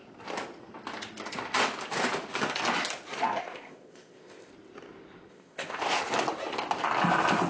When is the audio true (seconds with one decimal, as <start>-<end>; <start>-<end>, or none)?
0.0-3.4; 4.5-5.3; 6.0-7.5